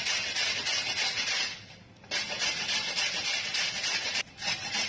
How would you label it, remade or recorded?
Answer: recorded